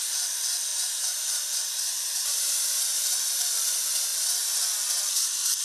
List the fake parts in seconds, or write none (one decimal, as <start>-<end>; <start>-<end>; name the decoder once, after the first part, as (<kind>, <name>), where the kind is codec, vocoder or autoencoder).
0.7-2.5 (vocoder, BigVGAN v2)